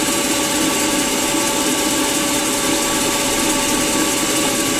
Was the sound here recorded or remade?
recorded